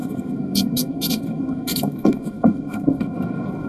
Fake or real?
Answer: fake